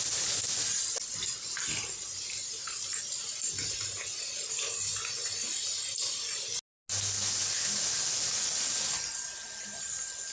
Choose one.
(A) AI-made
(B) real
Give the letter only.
B